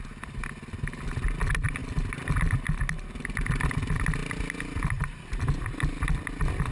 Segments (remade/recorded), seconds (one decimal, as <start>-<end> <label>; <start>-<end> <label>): 0.0-6.7 recorded